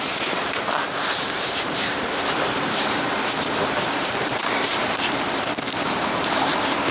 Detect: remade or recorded remade